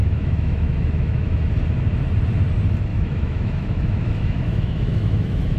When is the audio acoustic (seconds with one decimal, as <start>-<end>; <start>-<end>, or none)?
1.5-2.9